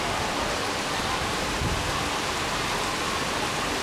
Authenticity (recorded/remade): recorded